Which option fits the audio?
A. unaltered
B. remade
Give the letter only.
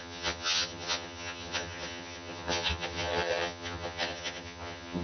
B